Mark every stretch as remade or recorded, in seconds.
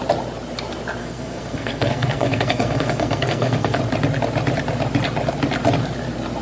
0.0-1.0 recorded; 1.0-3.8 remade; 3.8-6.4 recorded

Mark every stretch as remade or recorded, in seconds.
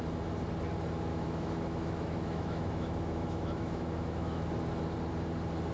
0.0-1.1 recorded; 1.1-4.5 remade; 4.5-5.7 recorded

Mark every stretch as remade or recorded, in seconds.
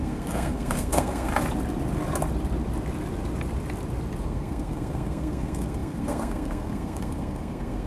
0.0-1.3 remade; 1.3-4.2 recorded; 4.2-7.9 remade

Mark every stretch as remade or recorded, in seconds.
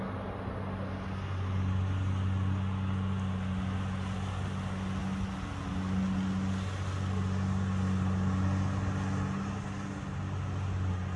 0.0-11.2 recorded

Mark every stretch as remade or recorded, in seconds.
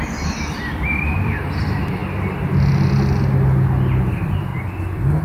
0.0-2.0 remade; 2.0-4.1 recorded; 4.1-4.5 remade; 4.5-5.2 recorded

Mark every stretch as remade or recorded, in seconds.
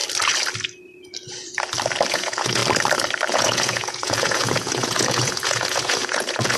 0.0-2.1 recorded; 2.1-2.6 remade; 2.6-3.3 recorded; 3.3-6.6 remade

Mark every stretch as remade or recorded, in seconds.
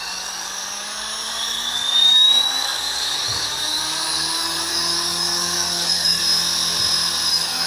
0.0-6.2 remade; 6.2-7.3 recorded; 7.3-7.7 remade